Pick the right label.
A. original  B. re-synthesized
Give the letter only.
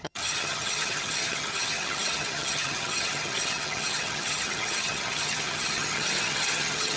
B